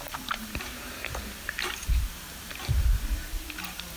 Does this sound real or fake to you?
fake